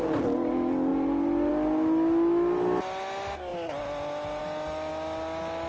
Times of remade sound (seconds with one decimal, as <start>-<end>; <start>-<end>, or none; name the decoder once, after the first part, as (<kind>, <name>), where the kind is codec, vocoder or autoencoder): none